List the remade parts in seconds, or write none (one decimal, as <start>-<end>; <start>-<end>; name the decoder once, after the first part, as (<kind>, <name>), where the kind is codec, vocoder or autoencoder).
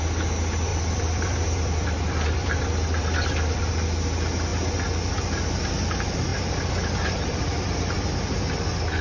0.7-3.6 (vocoder, BigVGAN v2); 6.3-8.1